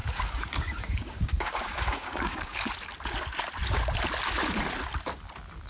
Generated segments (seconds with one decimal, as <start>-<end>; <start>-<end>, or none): 0.0-2.7